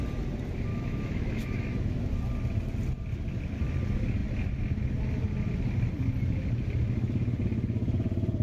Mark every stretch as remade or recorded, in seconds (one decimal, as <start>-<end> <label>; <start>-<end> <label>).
0.0-0.7 recorded; 0.7-2.1 remade; 2.1-8.4 recorded